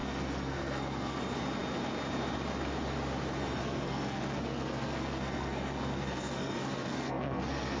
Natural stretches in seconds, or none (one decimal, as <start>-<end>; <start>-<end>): 1.2-3.6